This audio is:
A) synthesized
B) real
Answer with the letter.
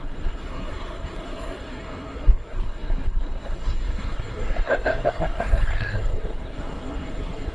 A